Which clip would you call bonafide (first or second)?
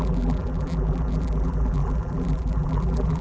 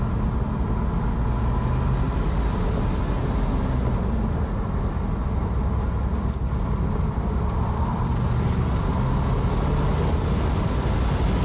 second